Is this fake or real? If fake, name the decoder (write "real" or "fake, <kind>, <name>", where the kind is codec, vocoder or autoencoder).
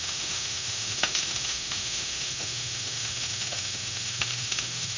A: fake, autoencoder, DAC-VAE